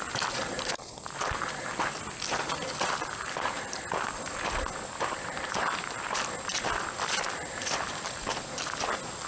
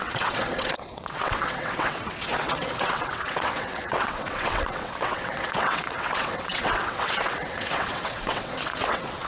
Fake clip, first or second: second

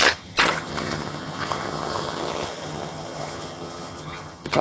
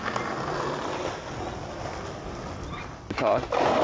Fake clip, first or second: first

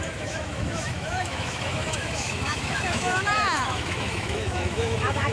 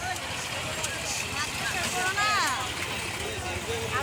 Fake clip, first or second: first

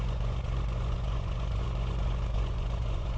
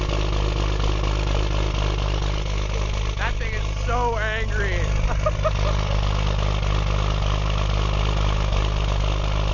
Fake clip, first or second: first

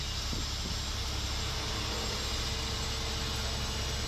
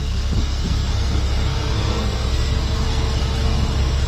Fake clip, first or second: second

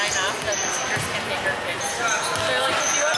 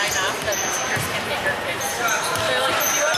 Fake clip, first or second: second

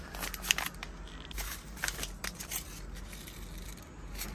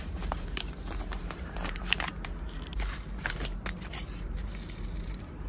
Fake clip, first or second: second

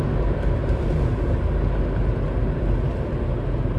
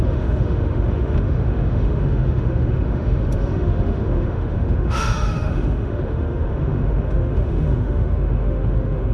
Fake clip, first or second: second